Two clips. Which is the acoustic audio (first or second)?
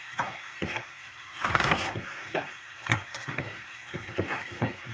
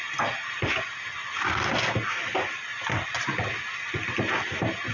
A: second